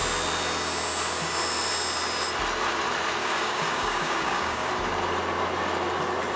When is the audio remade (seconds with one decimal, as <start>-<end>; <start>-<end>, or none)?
3.2-4.7